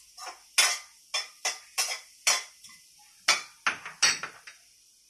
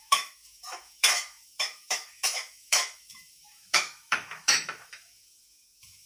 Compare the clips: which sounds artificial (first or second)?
second